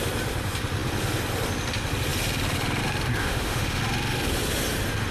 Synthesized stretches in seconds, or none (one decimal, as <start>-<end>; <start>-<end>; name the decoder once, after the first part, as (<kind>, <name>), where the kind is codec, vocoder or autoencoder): 3.2-3.8 (autoencoder, DAC-VAE)